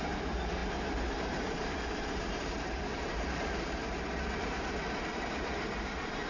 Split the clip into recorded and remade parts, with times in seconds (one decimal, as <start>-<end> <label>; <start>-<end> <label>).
0.0-6.3 remade

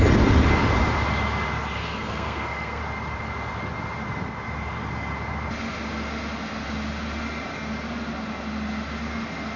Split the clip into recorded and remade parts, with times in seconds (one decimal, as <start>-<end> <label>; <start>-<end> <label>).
0.0-1.8 recorded; 1.8-2.8 remade; 2.8-9.6 recorded

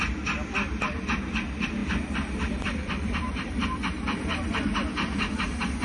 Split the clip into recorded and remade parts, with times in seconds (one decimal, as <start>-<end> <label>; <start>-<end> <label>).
0.0-1.8 recorded; 1.8-5.3 remade; 5.3-5.8 recorded